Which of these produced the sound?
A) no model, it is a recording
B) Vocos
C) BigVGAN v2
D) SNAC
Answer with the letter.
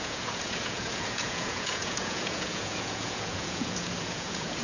B